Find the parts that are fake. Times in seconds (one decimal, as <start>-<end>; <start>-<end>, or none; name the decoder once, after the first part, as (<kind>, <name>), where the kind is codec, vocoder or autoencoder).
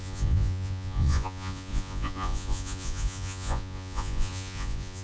0.0-5.0 (vocoder, Vocos)